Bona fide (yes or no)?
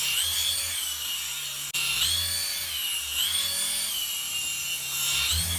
yes